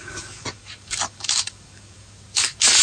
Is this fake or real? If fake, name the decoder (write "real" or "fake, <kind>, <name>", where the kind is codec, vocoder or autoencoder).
fake, codec, DAC